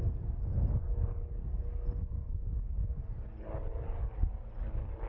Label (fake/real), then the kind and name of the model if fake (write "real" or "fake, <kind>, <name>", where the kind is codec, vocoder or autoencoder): real